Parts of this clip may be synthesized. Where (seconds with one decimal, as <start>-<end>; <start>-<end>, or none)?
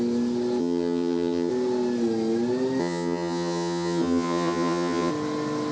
0.6-1.5; 2.8-5.1